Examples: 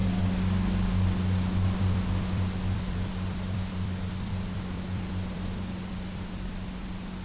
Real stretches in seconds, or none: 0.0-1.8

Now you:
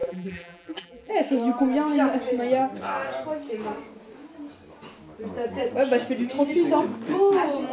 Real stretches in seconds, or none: 1.1-7.7

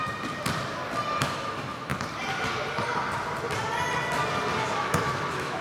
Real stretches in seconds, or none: 0.0-1.2; 1.9-4.6

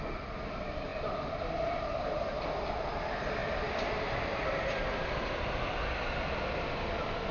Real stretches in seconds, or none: 0.0-7.3

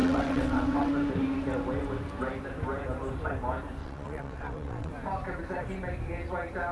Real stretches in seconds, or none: 0.9-3.8; 4.9-6.7

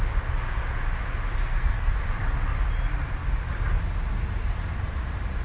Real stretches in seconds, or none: 0.0-1.4; 1.9-5.4

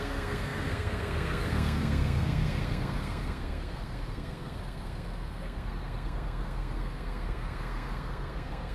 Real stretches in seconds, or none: none

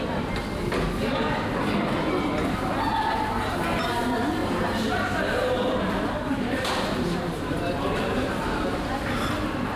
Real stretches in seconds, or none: 0.0-2.9; 3.8-4.4; 8.9-9.8